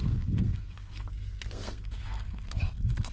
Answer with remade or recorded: remade